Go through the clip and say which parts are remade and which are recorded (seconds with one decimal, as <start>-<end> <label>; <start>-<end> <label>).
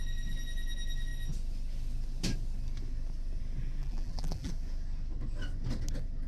0.0-3.8 recorded; 3.8-4.5 remade; 4.5-6.3 recorded